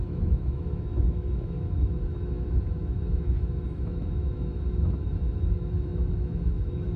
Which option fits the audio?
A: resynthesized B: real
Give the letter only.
A